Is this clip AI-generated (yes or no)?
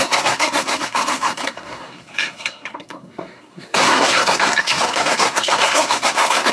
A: yes